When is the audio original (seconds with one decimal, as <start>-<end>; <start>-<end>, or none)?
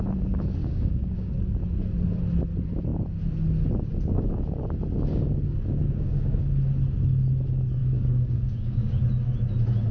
0.0-0.6; 1.3-5.8; 6.4-7.8; 9.0-9.9